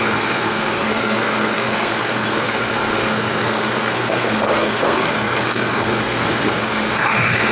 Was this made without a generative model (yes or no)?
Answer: no